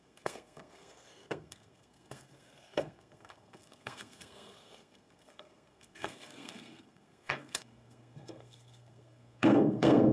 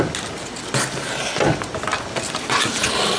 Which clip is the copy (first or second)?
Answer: first